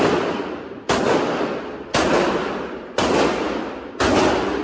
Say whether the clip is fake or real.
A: real